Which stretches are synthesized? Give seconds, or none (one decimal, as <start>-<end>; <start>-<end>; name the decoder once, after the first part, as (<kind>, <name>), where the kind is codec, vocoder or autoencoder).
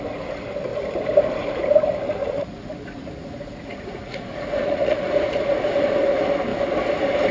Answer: 2.2-5.0 (vocoder, Vocos)